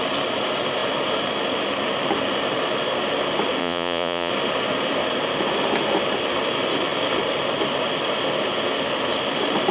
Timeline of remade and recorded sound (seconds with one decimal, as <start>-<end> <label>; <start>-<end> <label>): 0.0-3.6 recorded; 3.6-4.3 remade; 4.3-9.7 recorded